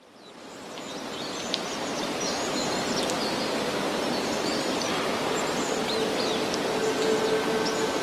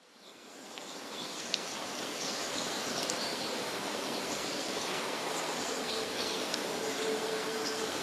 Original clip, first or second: first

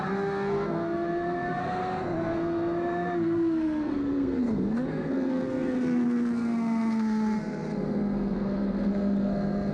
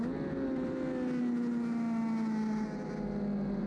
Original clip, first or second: second